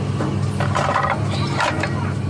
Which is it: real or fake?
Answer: real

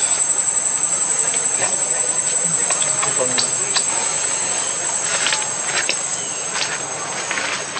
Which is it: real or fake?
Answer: real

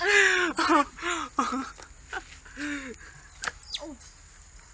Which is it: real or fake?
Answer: real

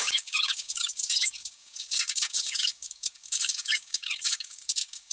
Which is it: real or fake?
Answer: fake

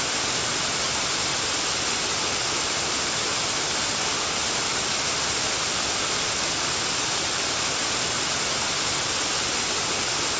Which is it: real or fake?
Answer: real